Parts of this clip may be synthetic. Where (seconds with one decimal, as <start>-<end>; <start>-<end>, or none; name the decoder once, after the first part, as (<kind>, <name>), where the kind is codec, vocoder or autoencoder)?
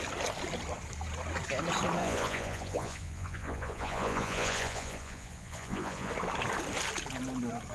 2.0-6.1 (vocoder, Vocos)